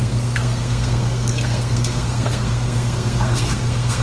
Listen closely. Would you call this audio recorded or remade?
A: remade